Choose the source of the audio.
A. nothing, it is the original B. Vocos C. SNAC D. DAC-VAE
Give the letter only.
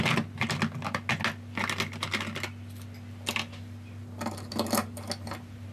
A